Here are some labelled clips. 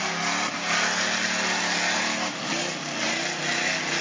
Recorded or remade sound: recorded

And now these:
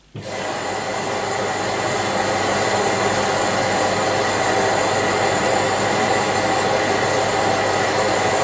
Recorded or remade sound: recorded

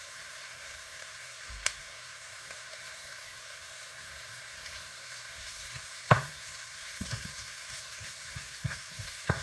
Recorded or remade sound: remade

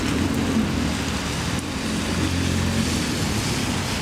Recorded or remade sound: recorded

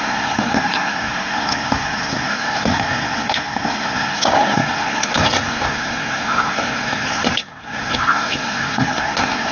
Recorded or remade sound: remade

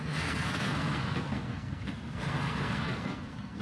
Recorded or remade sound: remade